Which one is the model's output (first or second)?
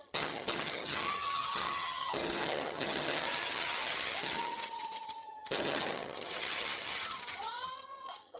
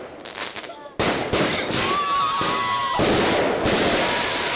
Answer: first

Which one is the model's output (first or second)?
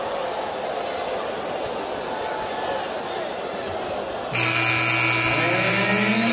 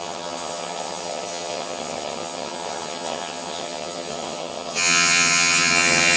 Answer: second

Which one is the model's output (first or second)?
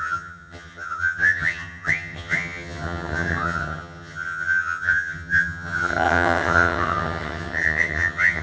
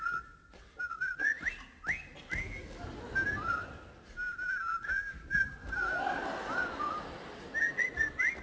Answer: first